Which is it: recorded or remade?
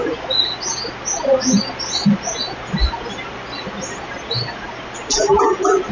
recorded